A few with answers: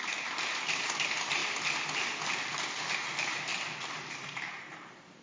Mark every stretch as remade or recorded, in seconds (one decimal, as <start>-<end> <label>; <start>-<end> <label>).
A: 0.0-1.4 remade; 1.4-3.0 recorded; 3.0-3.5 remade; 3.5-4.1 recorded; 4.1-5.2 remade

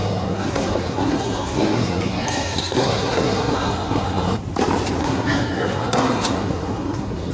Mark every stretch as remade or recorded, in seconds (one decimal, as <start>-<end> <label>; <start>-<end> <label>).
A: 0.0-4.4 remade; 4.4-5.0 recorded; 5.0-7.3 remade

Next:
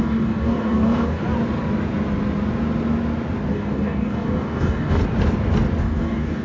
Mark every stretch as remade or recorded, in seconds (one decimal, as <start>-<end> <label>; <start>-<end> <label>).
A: 0.0-1.2 remade; 1.2-3.5 recorded; 3.5-5.0 remade; 5.0-5.8 recorded; 5.8-6.4 remade

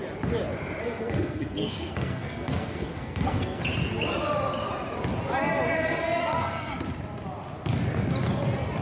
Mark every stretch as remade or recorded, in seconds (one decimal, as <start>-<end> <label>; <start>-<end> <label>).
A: 0.0-0.8 recorded; 0.8-3.6 remade; 3.6-6.2 recorded; 6.2-6.7 remade; 6.7-8.8 recorded

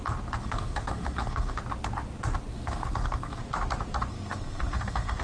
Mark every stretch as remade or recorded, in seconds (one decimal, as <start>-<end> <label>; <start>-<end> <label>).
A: 0.0-0.4 recorded; 0.4-1.6 remade; 1.6-2.5 recorded; 2.5-3.4 remade; 3.4-4.1 recorded; 4.1-5.2 remade

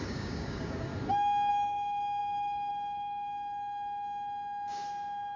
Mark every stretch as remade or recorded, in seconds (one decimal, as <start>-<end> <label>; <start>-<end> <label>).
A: 0.0-0.9 remade; 0.9-1.5 recorded; 1.5-5.4 remade